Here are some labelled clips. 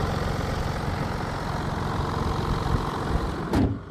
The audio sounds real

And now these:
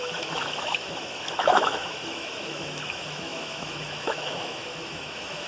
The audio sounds fake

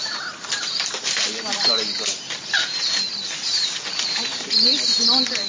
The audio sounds real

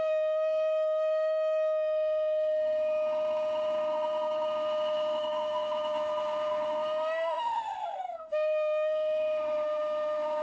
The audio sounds fake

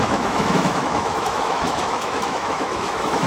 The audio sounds fake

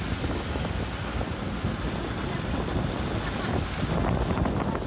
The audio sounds real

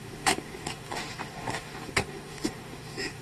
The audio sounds fake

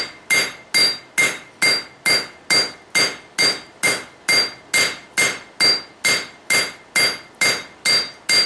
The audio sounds real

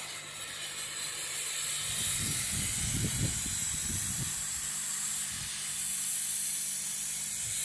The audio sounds real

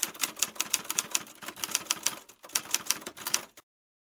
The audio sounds real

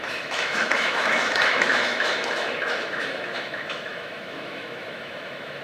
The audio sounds fake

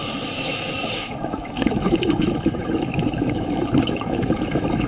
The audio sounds fake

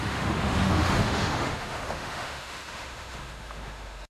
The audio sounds fake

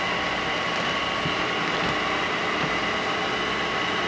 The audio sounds real